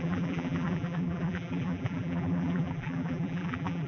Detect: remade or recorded remade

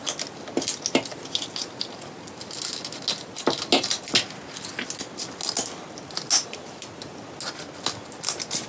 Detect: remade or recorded recorded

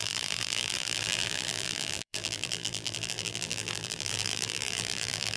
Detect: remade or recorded remade